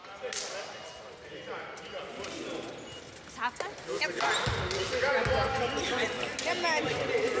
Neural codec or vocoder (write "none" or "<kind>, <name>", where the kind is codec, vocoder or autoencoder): none